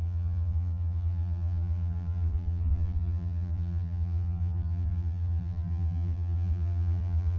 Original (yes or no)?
no